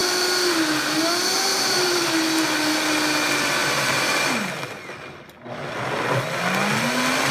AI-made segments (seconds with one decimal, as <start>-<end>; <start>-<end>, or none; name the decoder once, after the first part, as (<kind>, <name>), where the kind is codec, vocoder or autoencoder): 1.5-2.0 (vocoder, BigVGAN v2)

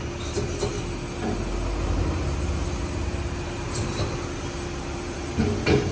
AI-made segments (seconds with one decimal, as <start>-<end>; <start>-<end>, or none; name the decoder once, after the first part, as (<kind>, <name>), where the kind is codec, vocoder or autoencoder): none

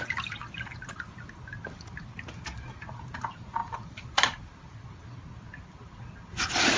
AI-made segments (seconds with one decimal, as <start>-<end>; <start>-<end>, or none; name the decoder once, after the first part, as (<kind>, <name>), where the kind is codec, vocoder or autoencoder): none

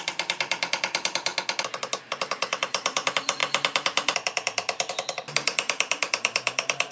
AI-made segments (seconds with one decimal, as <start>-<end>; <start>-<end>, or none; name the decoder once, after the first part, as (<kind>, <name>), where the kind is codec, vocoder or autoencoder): 0.0-1.3 (vocoder, BigVGAN v2); 2.0-6.9

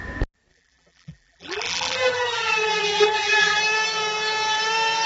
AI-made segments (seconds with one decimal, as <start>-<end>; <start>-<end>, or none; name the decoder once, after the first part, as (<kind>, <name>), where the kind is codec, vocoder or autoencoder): 0.5-3.6 (vocoder, BigVGAN v2)